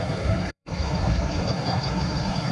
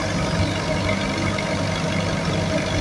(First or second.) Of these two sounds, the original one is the second